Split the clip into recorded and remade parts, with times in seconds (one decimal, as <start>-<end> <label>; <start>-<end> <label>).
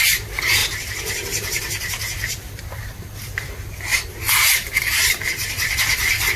0.0-6.4 recorded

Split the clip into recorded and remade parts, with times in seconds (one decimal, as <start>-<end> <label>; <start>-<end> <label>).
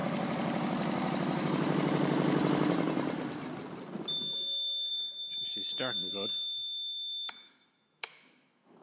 0.0-4.2 recorded; 4.2-4.9 remade; 4.9-5.8 recorded; 5.8-8.8 remade